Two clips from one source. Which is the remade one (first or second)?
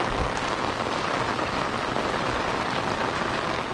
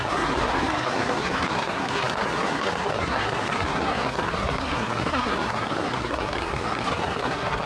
second